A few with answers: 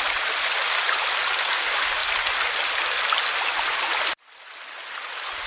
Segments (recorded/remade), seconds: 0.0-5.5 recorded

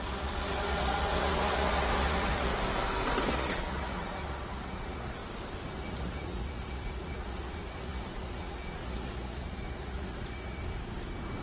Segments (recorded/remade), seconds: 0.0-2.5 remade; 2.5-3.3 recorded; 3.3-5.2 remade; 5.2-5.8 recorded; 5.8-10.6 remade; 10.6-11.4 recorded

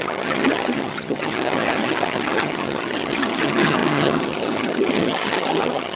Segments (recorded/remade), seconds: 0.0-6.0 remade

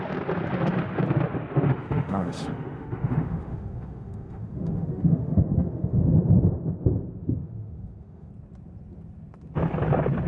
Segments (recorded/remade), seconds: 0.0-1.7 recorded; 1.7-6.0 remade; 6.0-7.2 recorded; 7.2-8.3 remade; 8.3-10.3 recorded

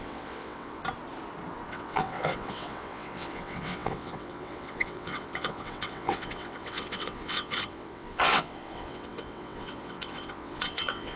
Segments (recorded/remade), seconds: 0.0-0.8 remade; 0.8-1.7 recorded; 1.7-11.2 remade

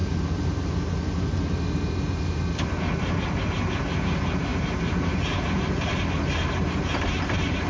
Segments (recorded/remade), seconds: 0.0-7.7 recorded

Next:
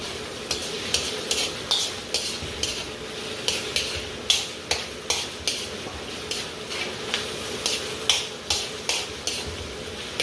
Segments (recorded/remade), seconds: 0.0-0.6 recorded; 0.6-1.3 remade; 1.3-10.2 recorded